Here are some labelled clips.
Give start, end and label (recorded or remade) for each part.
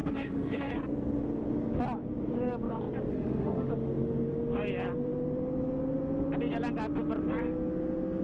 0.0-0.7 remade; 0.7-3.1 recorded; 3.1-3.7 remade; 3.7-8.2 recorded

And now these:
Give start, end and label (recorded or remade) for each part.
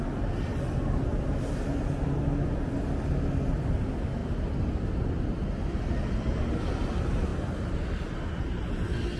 0.0-9.2 recorded